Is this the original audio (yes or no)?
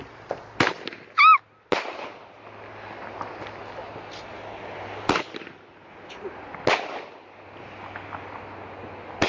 yes